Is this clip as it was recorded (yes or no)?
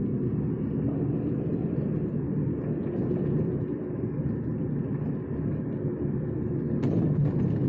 yes